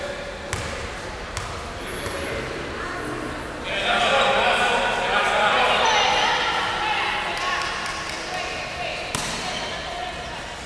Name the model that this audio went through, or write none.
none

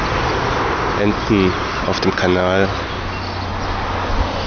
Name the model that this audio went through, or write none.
none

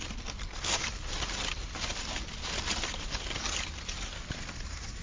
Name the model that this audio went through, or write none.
none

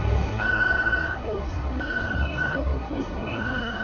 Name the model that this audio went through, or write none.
codec, SNAC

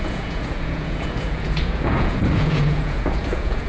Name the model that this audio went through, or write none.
vocoder, Vocos